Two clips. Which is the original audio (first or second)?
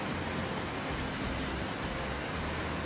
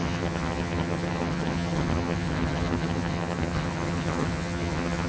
first